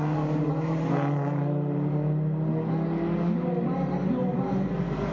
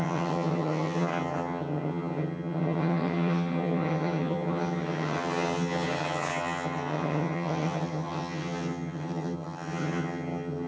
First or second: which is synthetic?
second